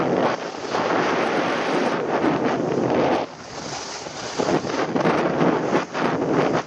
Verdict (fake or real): real